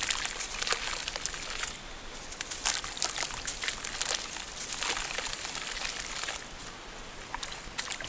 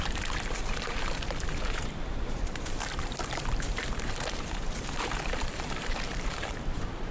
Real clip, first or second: first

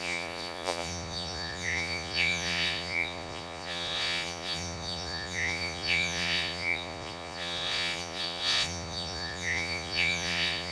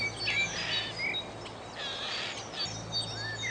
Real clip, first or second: second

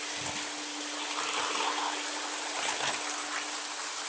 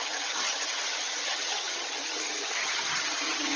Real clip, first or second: first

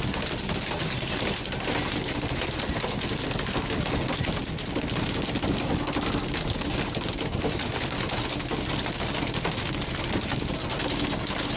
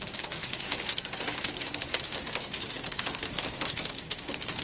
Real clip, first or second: first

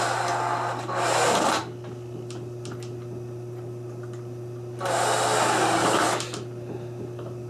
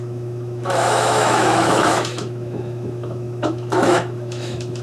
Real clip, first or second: first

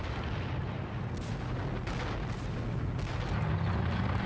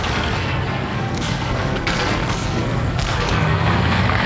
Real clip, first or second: first